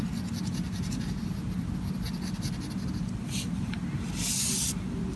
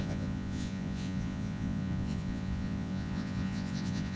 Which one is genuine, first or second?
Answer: first